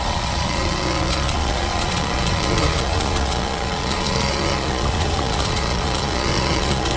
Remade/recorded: remade